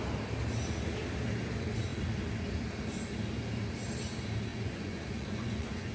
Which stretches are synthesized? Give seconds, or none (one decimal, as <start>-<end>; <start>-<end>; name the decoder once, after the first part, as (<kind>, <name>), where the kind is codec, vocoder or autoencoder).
4.5-5.9 (vocoder, Vocos)